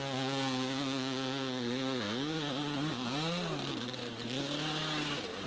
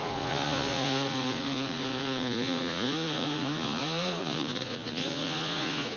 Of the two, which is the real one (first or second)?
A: first